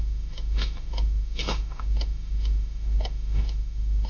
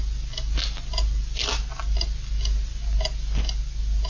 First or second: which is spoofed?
first